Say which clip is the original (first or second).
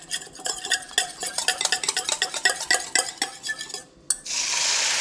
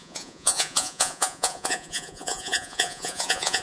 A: first